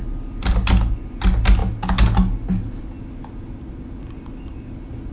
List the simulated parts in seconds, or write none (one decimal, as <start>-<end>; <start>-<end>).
none

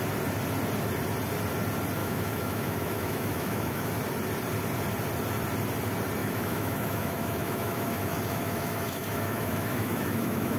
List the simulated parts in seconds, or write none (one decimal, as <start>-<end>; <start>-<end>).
2.0-3.9; 6.2-10.6

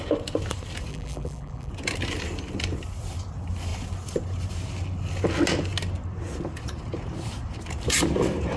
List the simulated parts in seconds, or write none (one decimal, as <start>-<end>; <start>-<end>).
0.9-1.7

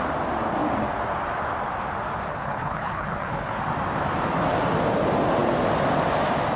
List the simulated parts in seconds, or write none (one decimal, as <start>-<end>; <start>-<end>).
2.3-3.6

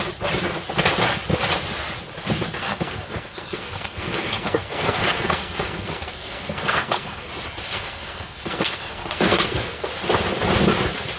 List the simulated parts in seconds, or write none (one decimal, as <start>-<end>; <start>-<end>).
2.6-7.3; 7.7-9.9

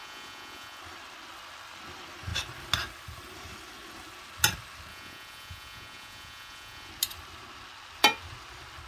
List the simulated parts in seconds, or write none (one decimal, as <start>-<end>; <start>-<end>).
0.0-0.8; 4.9-6.9

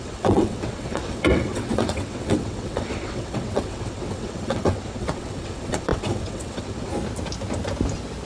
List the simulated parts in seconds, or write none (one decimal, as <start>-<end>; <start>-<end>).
0.0-6.9